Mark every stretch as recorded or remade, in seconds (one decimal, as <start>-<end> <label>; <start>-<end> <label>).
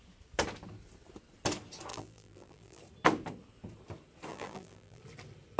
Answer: 0.0-1.9 recorded; 1.9-2.8 remade; 2.8-4.3 recorded; 4.3-5.0 remade; 5.0-5.6 recorded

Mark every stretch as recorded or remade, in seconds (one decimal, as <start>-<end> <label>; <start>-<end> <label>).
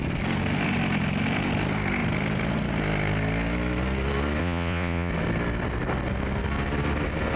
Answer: 0.0-4.4 recorded; 4.4-5.1 remade; 5.1-7.4 recorded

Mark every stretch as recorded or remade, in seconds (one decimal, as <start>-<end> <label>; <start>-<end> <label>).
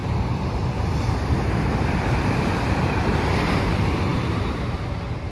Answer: 0.0-3.2 remade; 3.2-5.3 recorded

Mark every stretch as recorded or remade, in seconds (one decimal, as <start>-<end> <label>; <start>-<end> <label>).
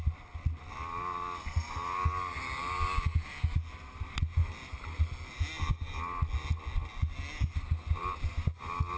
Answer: 0.0-9.0 recorded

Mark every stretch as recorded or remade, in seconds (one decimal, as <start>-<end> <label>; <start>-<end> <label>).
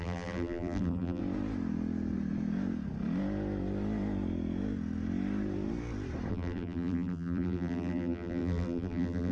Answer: 0.0-1.2 remade; 1.2-6.3 recorded; 6.3-9.3 remade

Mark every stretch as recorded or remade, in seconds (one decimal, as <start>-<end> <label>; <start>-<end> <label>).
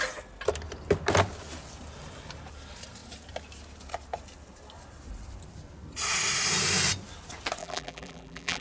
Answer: 0.0-7.6 recorded; 7.6-8.6 remade